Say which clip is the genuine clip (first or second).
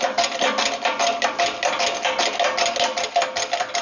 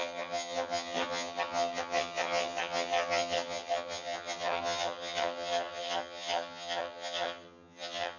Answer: first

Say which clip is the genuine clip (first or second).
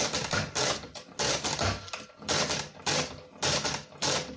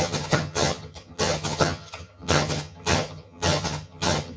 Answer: first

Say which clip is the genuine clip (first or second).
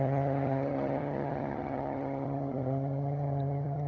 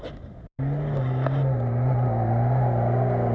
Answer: second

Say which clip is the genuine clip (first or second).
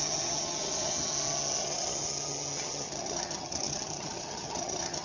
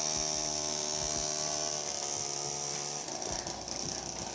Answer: second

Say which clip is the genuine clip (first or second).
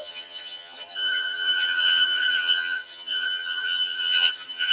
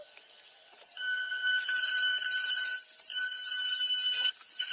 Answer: second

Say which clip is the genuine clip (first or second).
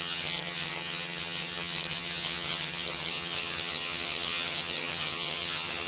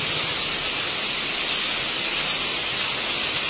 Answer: second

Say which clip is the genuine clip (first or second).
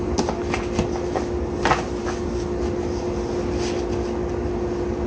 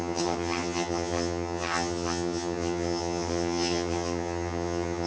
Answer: first